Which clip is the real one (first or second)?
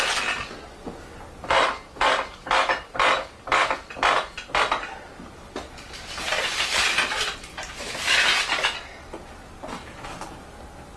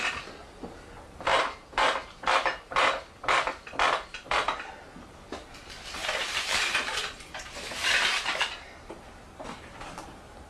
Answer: first